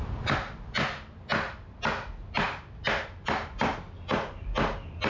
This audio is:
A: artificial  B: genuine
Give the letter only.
B